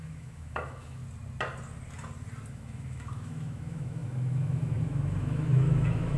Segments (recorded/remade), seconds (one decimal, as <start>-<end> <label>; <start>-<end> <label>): 0.0-1.0 remade; 1.0-2.5 recorded; 2.5-6.2 remade